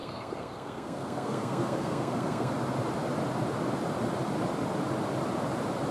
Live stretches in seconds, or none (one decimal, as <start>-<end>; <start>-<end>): 2.5-5.9